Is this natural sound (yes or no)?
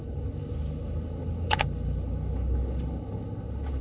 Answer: no